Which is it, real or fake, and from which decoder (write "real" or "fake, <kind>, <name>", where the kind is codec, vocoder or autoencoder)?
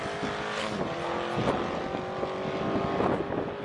real